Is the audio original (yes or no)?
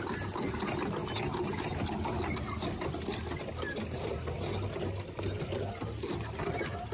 yes